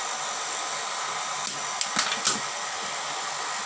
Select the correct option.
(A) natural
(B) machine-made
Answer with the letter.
A